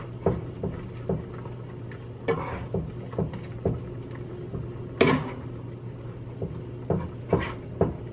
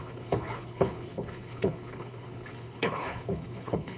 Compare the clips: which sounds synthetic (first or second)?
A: second